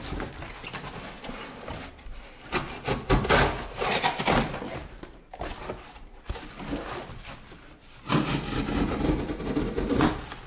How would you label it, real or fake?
real